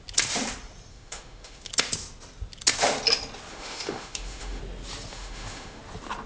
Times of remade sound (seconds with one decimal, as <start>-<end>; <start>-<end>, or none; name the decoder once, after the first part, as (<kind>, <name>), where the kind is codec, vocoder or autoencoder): 0.9-1.7 (autoencoder, DAC-VAE); 3.5-4.6; 5.1-5.8

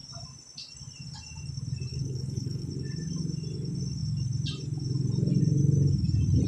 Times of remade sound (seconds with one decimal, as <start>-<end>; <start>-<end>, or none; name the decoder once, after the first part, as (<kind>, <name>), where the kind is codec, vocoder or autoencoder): 1.9-2.7 (codec, HILCodec)